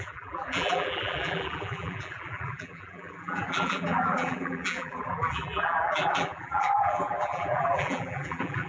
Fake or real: fake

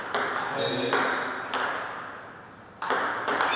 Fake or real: real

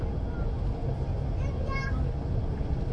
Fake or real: real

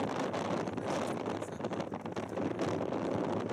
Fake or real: real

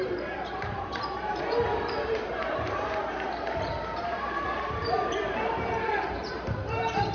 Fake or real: fake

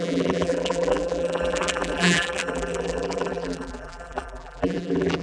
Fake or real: fake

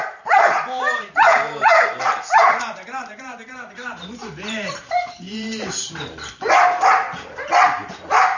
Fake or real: fake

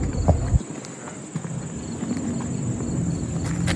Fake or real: real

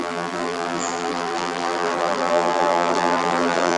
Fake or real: fake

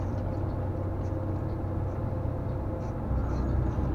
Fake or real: real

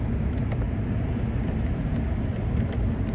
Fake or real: real